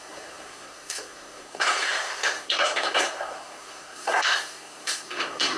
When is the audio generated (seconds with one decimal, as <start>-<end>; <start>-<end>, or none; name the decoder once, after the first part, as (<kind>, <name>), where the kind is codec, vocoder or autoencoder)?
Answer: 0.0-5.6 (codec, SNAC)